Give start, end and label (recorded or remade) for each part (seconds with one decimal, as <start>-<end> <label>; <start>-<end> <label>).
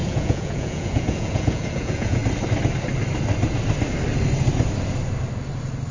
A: 0.0-2.2 remade; 2.2-5.9 recorded